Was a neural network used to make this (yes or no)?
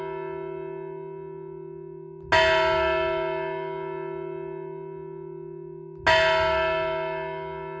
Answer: no